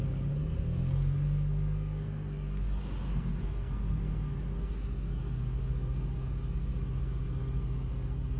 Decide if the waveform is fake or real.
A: fake